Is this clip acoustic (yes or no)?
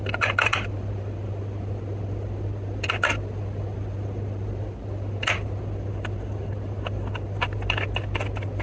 yes